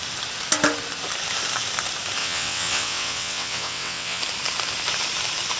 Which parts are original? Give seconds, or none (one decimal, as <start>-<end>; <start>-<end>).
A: 0.0-2.2; 4.2-5.6